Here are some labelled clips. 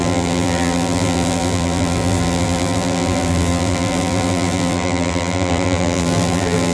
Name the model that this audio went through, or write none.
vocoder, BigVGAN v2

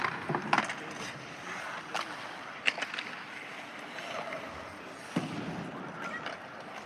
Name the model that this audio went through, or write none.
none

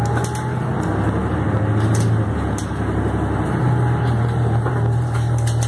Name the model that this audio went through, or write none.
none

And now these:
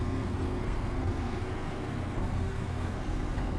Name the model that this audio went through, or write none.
codec, SNAC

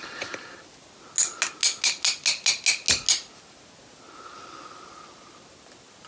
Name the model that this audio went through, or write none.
none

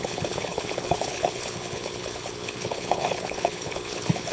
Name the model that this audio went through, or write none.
codec, HILCodec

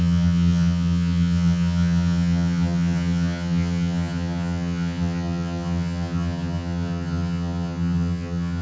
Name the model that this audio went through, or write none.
vocoder, HiFi-GAN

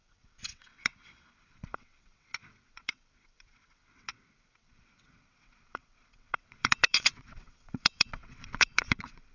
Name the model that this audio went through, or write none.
vocoder, WaveNeXt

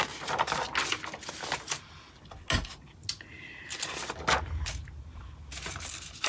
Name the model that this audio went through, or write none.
none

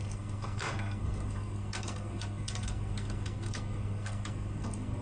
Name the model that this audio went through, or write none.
codec, SNAC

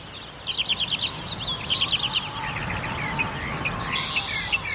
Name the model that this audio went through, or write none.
none